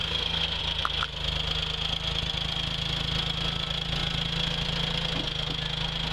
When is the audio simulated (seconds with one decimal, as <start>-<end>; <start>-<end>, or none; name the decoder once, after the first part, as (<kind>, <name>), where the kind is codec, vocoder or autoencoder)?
0.0-0.6 (codec, SNAC)